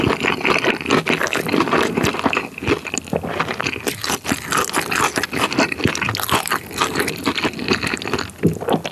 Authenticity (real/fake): real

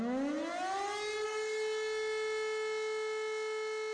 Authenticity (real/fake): real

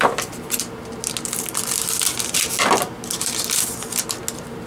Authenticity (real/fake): real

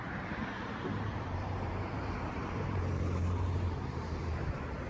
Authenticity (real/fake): fake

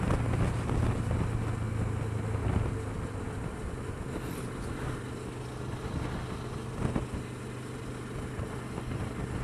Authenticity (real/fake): real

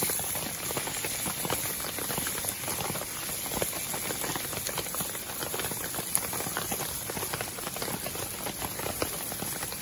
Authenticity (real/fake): real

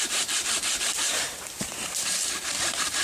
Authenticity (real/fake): fake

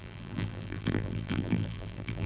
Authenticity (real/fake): fake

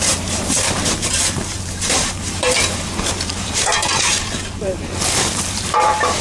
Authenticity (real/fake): fake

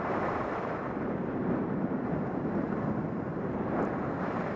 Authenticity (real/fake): fake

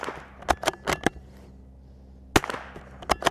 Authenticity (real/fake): real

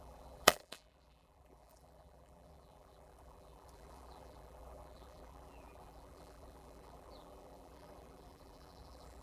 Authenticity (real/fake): fake